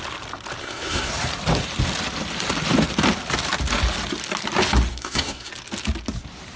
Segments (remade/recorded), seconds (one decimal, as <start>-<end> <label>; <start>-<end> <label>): 0.0-0.6 recorded; 0.6-1.1 remade; 1.1-4.9 recorded; 4.9-5.5 remade; 5.5-6.6 recorded